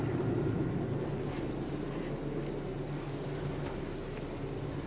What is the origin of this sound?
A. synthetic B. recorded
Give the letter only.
B